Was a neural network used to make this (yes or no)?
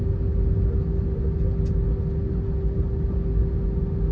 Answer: no